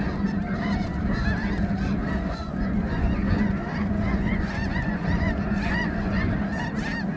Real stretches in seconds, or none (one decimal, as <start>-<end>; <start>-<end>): 0.0-2.0; 6.3-7.2